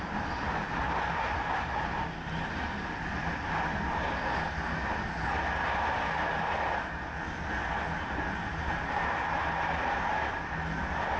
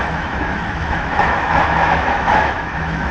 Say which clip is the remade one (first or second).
second